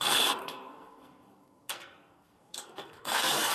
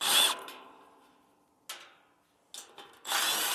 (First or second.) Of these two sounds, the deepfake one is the first